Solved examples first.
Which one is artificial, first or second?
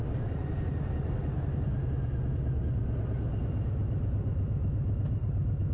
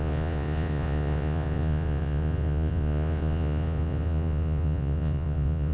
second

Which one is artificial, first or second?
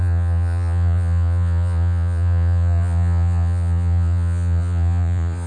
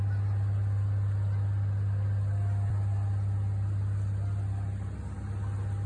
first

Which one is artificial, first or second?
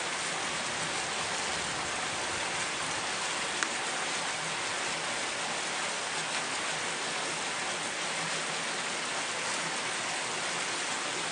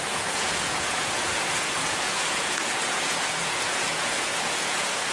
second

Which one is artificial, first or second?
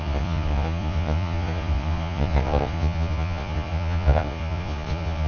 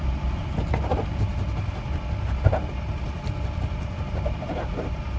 first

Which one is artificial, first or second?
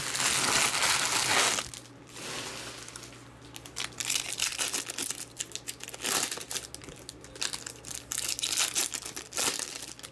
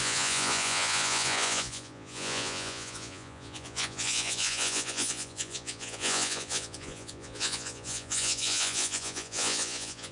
second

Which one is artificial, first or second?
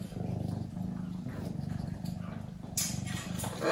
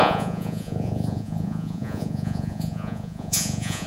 second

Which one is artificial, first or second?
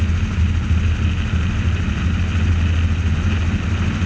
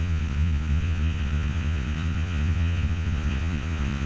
second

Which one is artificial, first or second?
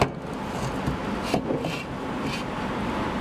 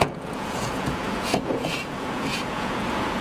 second